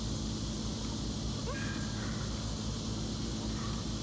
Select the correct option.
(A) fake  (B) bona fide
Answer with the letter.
B